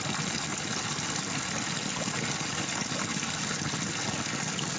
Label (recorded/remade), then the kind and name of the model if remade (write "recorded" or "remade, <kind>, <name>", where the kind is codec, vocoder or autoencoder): recorded